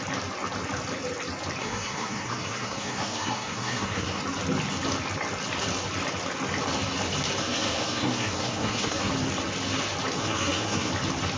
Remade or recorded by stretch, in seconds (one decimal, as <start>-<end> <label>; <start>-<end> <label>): 0.0-1.6 recorded; 1.6-4.2 remade; 4.2-7.4 recorded; 7.4-9.1 remade; 9.1-10.2 recorded; 10.2-10.9 remade; 10.9-11.4 recorded